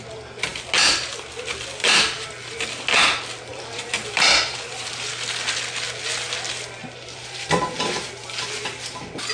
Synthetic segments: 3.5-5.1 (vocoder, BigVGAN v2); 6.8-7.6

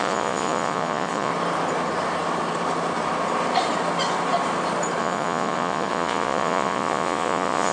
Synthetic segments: 0.0-1.3 (vocoder, Vocos); 5.0-7.7

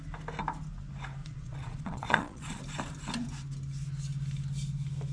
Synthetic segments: 1.2-2.6 (vocoder, Vocos)